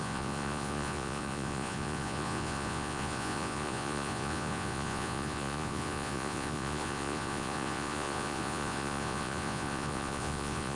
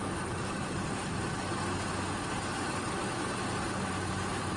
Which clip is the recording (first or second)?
second